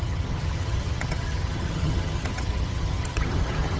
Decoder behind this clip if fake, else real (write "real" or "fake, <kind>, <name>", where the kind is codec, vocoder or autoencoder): fake, vocoder, HiFi-GAN